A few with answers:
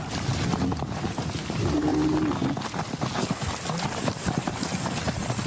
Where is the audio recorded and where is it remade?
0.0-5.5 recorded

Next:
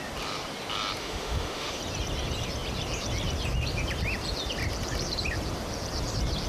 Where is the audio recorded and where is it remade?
0.0-1.0 recorded; 1.0-1.8 remade; 1.8-6.5 recorded

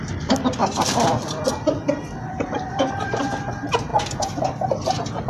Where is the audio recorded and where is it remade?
0.0-0.6 recorded; 0.6-3.5 remade; 3.5-5.3 recorded

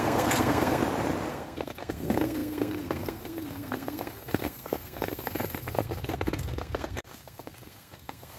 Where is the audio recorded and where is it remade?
0.0-0.8 remade; 0.8-1.3 recorded; 1.3-8.4 remade